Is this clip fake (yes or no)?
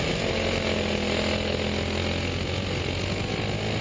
no